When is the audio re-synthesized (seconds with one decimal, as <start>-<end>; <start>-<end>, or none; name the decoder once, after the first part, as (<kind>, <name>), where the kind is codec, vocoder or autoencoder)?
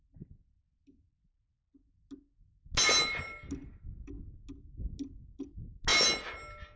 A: none